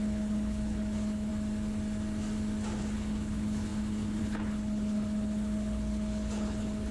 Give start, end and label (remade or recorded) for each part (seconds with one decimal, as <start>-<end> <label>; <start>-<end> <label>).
0.0-1.3 remade; 1.3-2.8 recorded; 2.8-6.9 remade